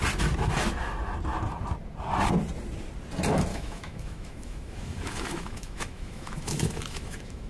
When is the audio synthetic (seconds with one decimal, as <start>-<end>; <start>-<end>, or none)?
3.5-7.5